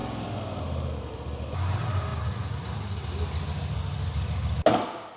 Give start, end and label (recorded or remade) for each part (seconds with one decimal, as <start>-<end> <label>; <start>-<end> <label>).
0.0-5.2 recorded

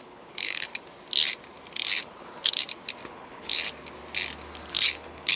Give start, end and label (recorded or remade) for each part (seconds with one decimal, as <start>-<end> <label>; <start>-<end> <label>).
0.0-0.7 remade; 0.7-2.0 recorded; 2.0-2.6 remade; 2.6-3.1 recorded; 3.1-3.5 remade; 3.5-4.7 recorded; 4.7-5.4 remade

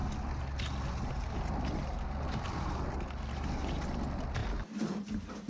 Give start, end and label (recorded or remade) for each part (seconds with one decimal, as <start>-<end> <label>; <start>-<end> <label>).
0.0-5.5 recorded

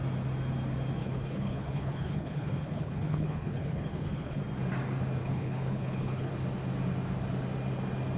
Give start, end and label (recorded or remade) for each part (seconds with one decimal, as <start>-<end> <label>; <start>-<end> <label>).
0.0-1.0 recorded; 1.0-4.4 remade; 4.4-5.2 recorded; 5.2-6.3 remade; 6.3-8.2 recorded

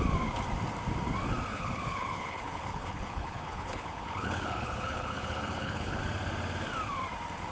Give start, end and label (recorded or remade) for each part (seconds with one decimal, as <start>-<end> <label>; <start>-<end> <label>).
0.0-1.5 recorded; 1.5-6.0 remade; 6.0-7.5 recorded

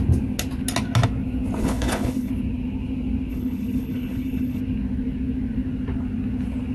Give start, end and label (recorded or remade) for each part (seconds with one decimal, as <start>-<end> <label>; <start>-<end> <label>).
0.0-1.6 recorded; 1.6-2.3 remade; 2.3-3.3 recorded; 3.3-4.6 remade; 4.6-6.7 recorded